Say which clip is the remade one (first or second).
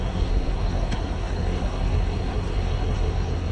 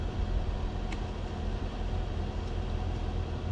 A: first